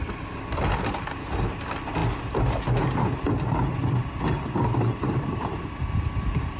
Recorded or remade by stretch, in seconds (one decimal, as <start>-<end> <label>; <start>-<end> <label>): 0.0-6.6 recorded